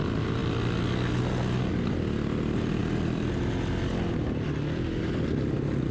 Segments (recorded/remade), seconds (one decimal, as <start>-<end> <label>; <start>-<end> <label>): 0.0-5.9 recorded